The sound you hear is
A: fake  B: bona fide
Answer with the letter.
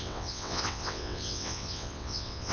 A